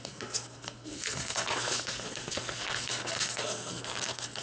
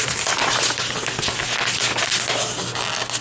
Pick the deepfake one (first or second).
first